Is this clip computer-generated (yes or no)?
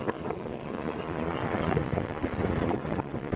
yes